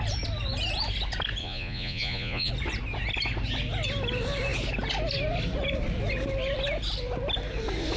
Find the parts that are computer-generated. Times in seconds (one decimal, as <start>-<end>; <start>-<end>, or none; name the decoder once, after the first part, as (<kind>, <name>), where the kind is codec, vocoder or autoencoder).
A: 1.4-2.5 (vocoder, Vocos)